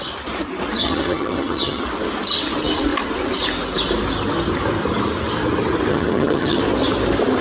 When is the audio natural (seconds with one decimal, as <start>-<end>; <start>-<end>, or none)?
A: 0.0-0.8; 1.8-5.9; 6.6-7.4